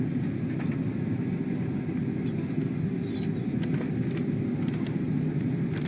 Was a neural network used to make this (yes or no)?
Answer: no